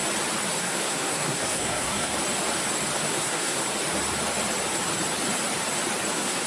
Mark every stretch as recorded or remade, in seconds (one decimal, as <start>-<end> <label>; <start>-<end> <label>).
0.0-0.6 recorded; 0.6-2.1 remade; 2.1-3.1 recorded; 3.1-3.6 remade; 3.6-6.1 recorded; 6.1-6.5 remade